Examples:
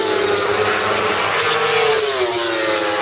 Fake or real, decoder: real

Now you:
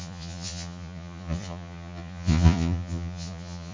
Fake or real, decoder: fake, vocoder, Vocos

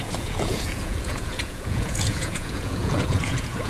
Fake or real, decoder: fake, vocoder, Vocos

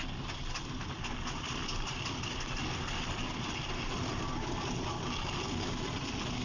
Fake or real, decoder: real